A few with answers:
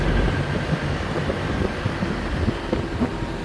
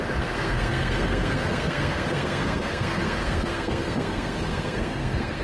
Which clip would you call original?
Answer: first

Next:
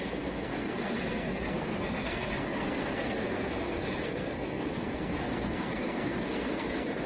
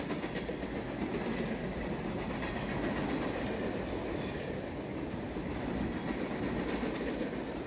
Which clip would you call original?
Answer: second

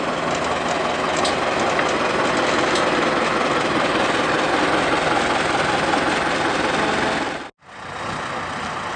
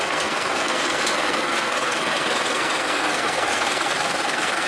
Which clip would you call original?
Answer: first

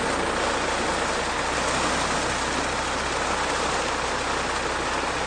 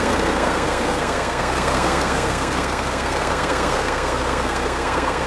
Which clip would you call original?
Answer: first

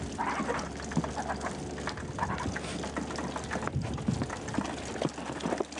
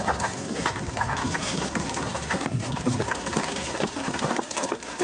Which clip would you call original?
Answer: first